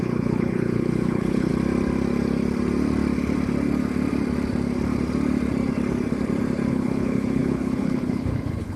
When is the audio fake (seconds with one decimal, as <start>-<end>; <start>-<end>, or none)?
0.0-1.5; 6.7-8.8